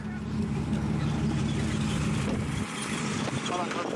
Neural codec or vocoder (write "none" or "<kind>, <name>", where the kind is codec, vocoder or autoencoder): none